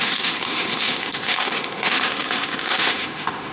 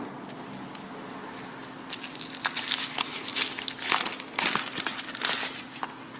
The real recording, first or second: second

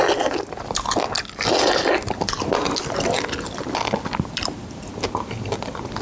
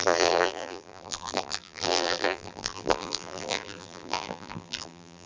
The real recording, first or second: first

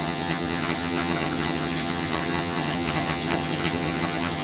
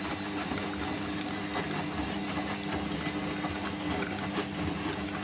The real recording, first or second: second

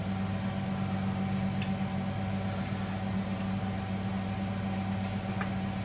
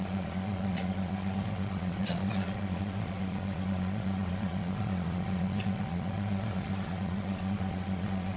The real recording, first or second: first